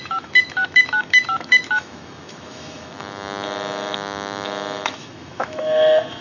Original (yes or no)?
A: no